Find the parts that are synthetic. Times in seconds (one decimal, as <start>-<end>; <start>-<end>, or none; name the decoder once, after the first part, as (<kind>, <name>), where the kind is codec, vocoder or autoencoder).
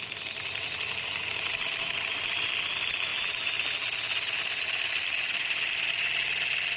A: 3.1-3.7 (vocoder, BigVGAN v2)